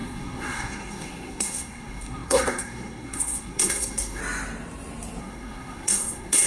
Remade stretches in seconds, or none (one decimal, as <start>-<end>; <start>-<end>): 0.0-4.2; 5.2-6.5